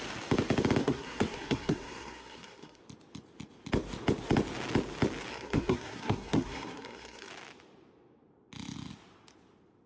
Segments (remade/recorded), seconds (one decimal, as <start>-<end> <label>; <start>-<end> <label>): 0.0-0.8 recorded; 0.8-2.8 remade; 2.8-5.3 recorded; 5.3-7.3 remade; 7.3-9.9 recorded

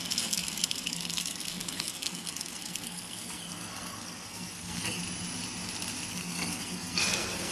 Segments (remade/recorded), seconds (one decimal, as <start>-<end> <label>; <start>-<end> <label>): 0.0-5.0 remade; 5.0-6.1 recorded; 6.1-7.5 remade

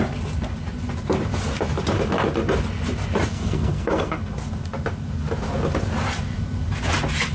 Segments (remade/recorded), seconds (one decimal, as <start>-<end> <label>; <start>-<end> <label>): 0.0-3.3 recorded; 3.3-4.2 remade; 4.2-7.3 recorded

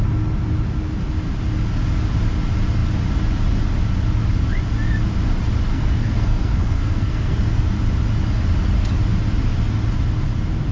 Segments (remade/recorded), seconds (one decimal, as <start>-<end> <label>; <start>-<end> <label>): 0.0-5.7 recorded; 5.7-7.6 remade; 7.6-10.7 recorded

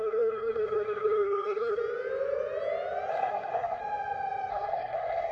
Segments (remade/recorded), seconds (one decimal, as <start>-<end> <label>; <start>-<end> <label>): 0.0-1.8 remade; 1.8-3.1 recorded; 3.1-3.8 remade; 3.8-4.5 recorded; 4.5-5.3 remade

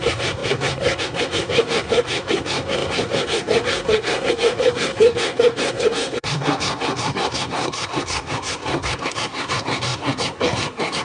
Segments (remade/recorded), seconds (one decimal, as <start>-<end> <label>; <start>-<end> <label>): 0.0-11.0 remade